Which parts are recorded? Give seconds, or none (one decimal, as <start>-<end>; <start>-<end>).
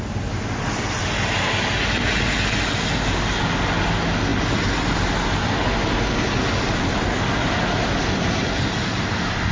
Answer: 0.0-9.5